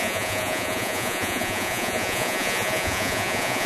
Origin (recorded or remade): remade